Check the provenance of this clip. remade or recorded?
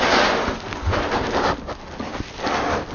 recorded